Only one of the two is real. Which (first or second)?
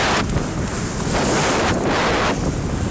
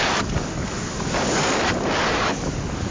first